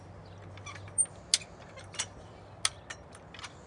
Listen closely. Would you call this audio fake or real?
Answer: real